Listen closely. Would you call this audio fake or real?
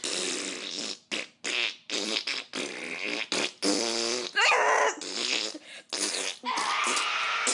real